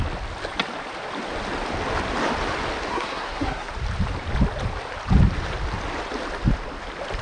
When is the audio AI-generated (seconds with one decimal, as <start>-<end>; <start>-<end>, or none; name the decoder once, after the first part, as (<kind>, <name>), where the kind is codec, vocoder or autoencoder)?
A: 2.9-3.7 (codec, SNAC)